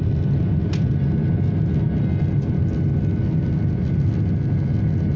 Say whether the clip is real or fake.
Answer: real